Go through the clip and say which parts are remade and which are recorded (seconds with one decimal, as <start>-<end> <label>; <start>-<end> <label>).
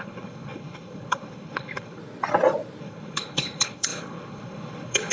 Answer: 0.0-2.0 remade; 2.0-2.8 recorded; 2.8-5.1 remade